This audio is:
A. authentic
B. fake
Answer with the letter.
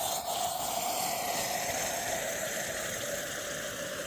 A